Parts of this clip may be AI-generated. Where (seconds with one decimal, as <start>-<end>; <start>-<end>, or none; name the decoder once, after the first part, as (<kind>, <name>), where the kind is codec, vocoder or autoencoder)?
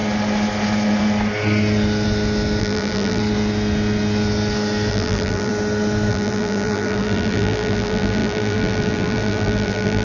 2.6-3.2 (vocoder, BigVGAN v2); 4.9-5.5; 6.1-10.0